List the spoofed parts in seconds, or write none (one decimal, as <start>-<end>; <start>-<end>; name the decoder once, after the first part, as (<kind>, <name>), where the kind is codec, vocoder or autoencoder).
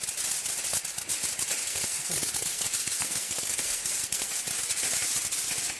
1.6-4.4 (codec, SNAC)